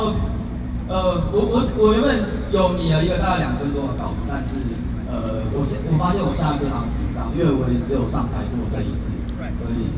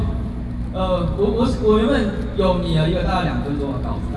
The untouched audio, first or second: second